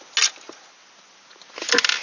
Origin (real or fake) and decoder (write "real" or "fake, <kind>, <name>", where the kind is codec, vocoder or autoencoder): real